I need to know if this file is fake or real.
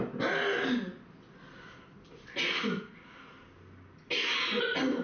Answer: real